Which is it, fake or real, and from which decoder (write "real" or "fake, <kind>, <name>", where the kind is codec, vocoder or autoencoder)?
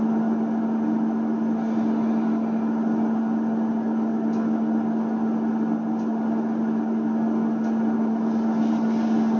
real